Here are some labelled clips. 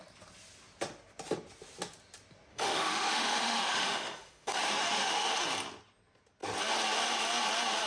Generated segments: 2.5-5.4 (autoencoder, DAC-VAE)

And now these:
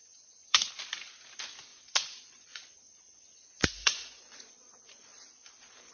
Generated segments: 0.0-0.7 (vocoder, Vocos); 1.7-5.2

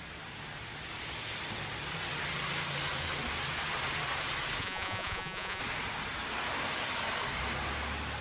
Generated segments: 4.6-5.6 (vocoder, Vocos)

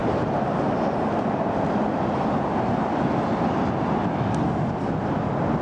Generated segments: none

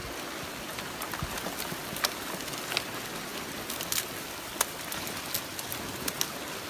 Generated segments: none

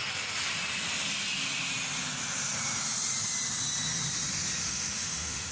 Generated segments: 4.6-5.5 (autoencoder, DAC-VAE)

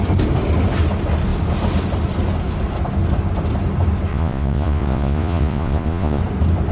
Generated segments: 4.1-6.2 (vocoder, Vocos)

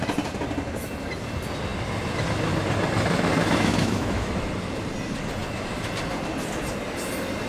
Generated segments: 3.4-4.5 (autoencoder, DAC-VAE)